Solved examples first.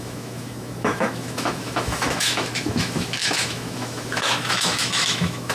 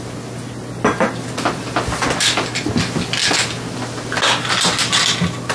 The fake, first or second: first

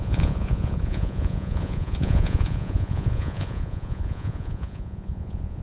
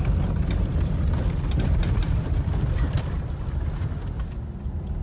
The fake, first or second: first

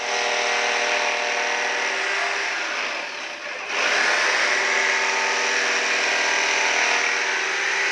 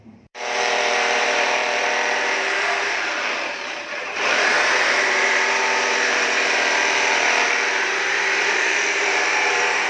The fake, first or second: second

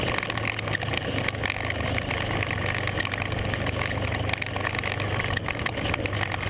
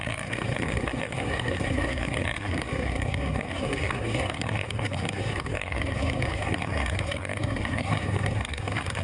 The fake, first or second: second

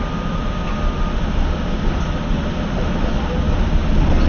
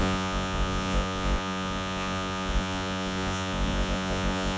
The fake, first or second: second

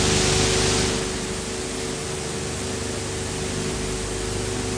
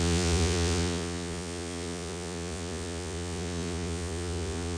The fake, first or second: second